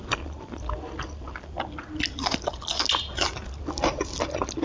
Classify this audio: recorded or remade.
recorded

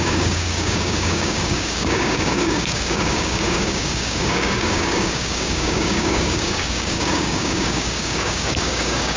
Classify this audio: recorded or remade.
remade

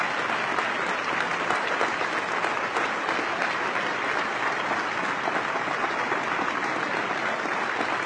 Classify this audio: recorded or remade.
recorded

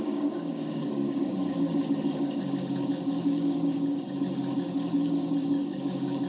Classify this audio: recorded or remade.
remade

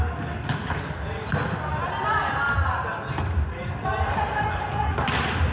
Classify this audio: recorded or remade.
recorded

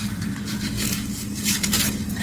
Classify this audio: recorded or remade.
remade